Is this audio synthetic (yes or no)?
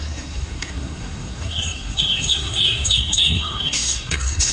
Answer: yes